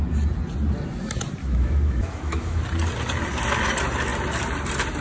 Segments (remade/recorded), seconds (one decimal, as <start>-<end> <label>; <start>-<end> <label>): 0.0-1.4 recorded; 1.4-2.6 remade; 2.6-5.0 recorded

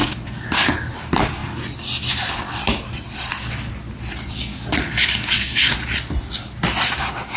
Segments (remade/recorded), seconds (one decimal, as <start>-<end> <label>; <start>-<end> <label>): 0.0-0.8 remade; 0.8-4.5 recorded; 4.5-5.7 remade; 5.7-7.4 recorded

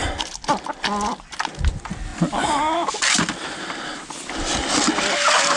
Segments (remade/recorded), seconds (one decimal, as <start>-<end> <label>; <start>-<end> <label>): 0.0-5.6 recorded

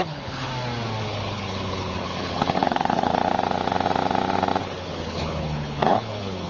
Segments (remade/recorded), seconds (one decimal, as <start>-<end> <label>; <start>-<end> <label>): 0.0-0.5 remade; 0.5-1.0 recorded; 1.0-3.1 remade; 3.1-4.6 recorded; 4.6-6.5 remade

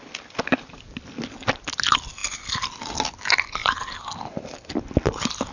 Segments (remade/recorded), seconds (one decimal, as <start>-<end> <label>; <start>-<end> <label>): 0.0-5.5 recorded

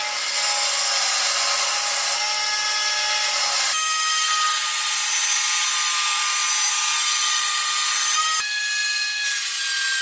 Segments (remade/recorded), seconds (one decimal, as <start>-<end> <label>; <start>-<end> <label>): 0.0-10.0 recorded